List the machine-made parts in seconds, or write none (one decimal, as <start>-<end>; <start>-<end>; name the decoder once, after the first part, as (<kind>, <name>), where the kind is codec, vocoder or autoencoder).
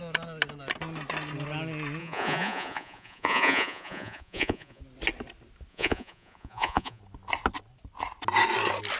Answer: 2.0-4.8 (vocoder, Vocos); 5.7-7.0